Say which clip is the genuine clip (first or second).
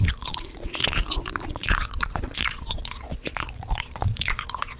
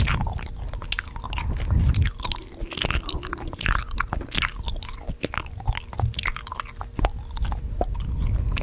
second